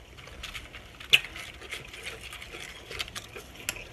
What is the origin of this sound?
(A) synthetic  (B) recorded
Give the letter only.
B